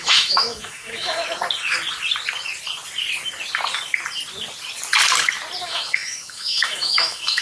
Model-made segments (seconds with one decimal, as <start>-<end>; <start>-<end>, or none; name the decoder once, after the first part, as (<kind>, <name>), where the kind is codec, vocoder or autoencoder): 0.0-1.2 (autoencoder, DAC-VAE); 5.6-7.4